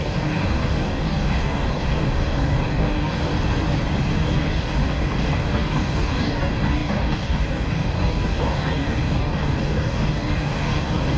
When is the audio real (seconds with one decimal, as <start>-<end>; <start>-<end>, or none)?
3.3-4.1